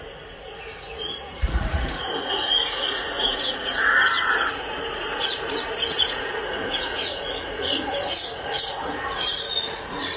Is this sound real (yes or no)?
no